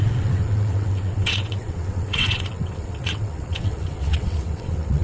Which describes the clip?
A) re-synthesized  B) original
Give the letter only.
A